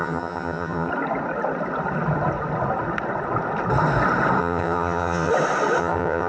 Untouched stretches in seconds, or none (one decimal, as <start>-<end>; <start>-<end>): 0.9-4.4; 5.3-5.8